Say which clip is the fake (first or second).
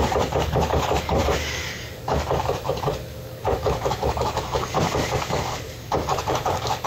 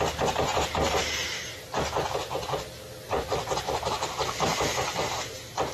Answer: first